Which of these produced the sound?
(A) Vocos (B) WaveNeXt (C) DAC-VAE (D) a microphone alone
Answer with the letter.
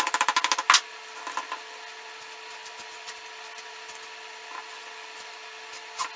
D